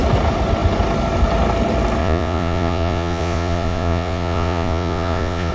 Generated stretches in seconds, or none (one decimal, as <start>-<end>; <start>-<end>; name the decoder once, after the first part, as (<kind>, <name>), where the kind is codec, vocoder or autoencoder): 2.0-5.5 (vocoder, Vocos)